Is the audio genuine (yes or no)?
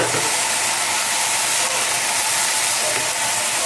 yes